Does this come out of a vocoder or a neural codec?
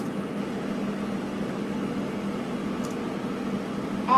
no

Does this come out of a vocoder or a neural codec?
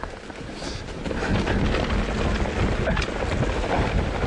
no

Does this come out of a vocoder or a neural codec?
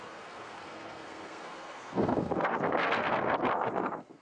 yes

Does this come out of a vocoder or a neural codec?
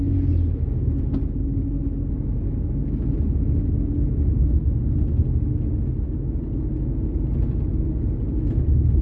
no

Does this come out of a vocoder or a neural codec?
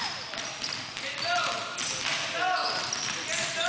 no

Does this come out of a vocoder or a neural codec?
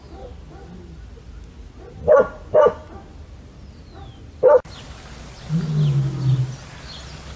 no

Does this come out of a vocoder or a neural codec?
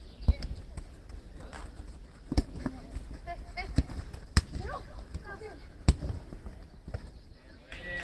no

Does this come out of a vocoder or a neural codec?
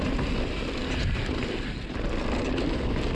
no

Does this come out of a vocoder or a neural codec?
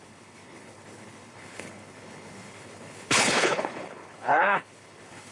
yes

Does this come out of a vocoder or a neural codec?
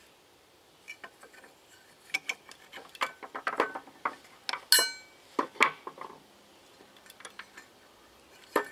no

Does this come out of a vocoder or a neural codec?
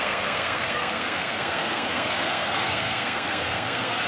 yes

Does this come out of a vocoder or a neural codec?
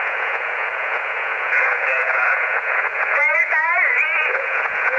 yes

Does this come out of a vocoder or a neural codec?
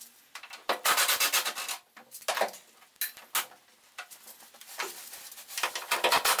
no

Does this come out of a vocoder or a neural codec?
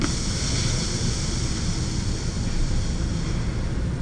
no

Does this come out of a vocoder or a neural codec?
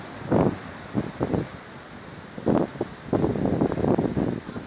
no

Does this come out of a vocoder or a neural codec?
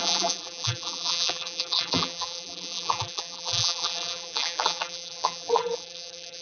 yes